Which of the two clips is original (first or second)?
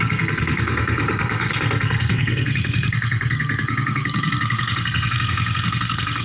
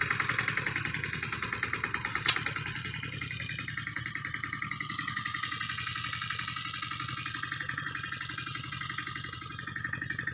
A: second